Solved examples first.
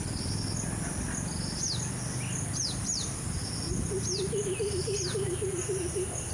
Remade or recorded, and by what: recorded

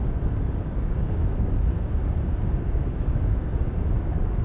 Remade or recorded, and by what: remade, codec, DAC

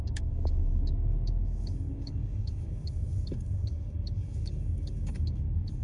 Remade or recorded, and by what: remade, codec, DAC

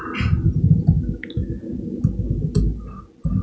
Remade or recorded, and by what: recorded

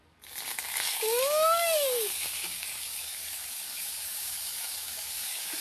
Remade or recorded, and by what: remade, codec, DAC